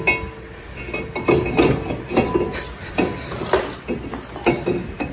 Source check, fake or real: real